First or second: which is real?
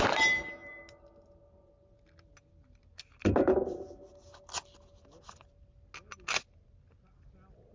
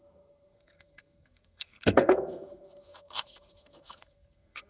first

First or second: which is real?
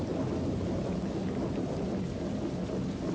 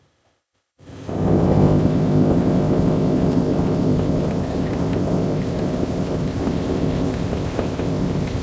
first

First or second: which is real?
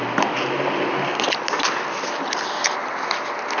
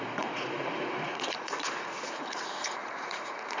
first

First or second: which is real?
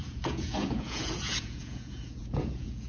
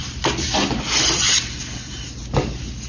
second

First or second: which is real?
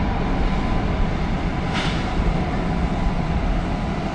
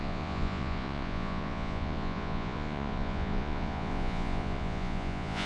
first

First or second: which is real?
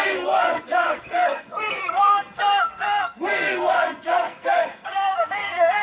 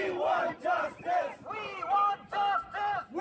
second